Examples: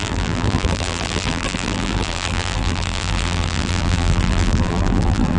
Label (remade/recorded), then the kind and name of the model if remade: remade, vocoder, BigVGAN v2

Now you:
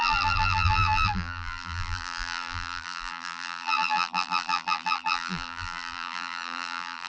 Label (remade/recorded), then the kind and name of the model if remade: remade, vocoder, BigVGAN v2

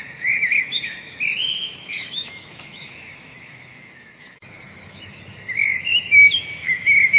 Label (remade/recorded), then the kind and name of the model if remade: remade, autoencoder, DAC-VAE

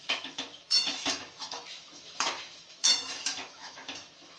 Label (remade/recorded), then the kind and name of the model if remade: remade, autoencoder, DAC-VAE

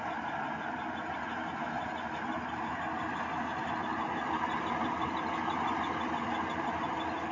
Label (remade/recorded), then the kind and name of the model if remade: recorded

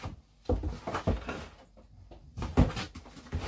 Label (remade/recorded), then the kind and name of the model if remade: recorded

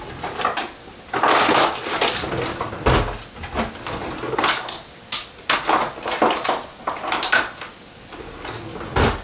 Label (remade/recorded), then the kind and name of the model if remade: recorded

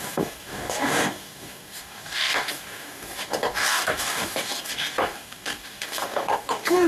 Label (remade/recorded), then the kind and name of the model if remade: remade, codec, DAC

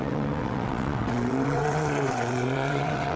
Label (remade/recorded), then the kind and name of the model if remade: remade, vocoder, WaveNeXt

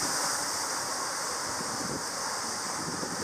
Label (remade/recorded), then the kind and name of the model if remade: recorded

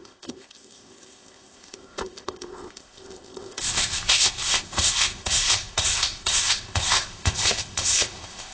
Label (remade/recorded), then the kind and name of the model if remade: remade, codec, ZipCodec